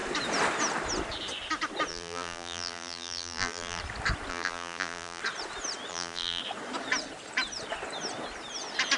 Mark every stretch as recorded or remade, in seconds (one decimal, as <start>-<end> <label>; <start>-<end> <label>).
0.0-1.9 recorded; 1.9-3.8 remade; 3.8-4.3 recorded; 4.3-5.2 remade; 5.2-5.9 recorded; 5.9-6.4 remade; 6.4-9.0 recorded